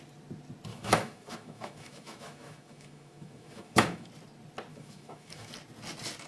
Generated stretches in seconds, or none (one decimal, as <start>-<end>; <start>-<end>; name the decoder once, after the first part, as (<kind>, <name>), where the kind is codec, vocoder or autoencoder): 0.7-4.1 (autoencoder, DAC-VAE); 4.7-5.5